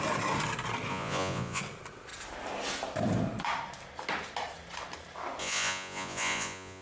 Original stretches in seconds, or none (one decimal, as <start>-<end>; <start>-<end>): 0.0-0.9; 1.6-5.4